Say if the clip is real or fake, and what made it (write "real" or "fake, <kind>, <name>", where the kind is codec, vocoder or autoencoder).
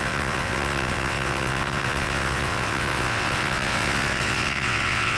fake, vocoder, WaveNeXt